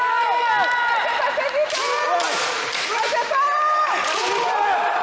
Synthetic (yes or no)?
no